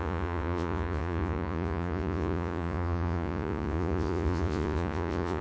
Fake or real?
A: fake